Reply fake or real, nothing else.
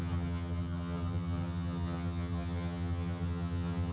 fake